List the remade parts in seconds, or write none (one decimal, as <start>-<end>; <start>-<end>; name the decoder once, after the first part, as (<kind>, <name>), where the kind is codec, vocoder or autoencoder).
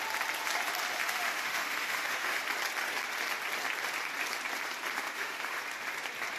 1.0-2.4 (autoencoder, DAC-VAE); 5.0-5.6